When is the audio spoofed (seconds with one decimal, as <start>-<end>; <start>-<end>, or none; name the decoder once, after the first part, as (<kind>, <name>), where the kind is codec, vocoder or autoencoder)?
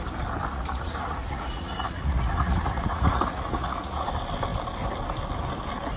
0.5-4.1 (vocoder, Vocos)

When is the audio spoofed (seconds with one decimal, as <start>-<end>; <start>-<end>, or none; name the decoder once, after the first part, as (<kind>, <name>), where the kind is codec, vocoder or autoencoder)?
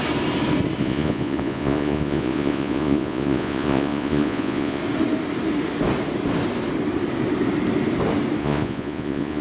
0.8-4.8 (vocoder, Vocos); 8.4-9.4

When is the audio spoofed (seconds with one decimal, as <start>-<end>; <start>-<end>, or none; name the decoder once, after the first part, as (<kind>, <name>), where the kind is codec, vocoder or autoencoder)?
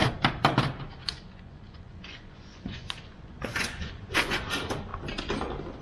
1.0-4.5 (vocoder, Vocos)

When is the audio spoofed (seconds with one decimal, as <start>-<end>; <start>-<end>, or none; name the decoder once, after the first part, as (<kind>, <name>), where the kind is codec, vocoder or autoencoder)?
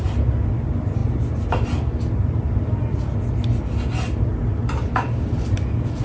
none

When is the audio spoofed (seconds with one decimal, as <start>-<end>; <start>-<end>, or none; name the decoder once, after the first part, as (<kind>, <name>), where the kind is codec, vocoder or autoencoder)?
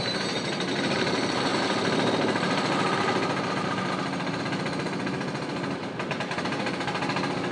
none